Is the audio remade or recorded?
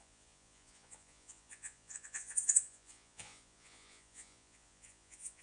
remade